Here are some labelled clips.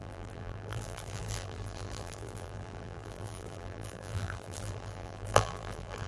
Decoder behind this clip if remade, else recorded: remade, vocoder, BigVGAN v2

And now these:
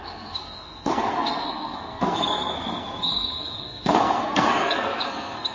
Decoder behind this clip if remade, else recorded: remade, codec, SNAC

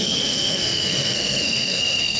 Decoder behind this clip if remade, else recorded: remade, codec, SNAC